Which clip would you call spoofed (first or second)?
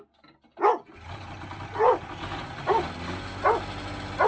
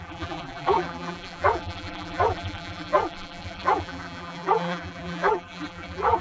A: second